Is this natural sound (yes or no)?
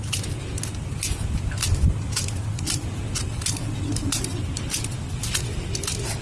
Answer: yes